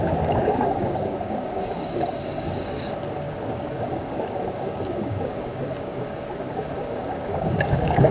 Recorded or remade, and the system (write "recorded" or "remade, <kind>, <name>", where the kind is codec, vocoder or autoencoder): remade, codec, DAC